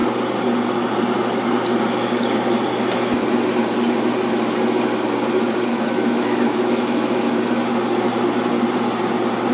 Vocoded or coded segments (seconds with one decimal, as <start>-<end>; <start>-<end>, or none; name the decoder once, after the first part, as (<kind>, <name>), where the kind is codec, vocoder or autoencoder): 5.7-7.3 (autoencoder, DAC-VAE)